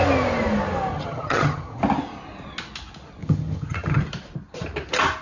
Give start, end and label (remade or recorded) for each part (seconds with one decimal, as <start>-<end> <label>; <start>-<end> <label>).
0.0-0.9 recorded; 0.9-1.8 remade; 1.8-3.2 recorded; 3.2-4.0 remade; 4.0-5.2 recorded